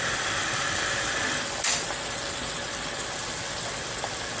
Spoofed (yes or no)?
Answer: no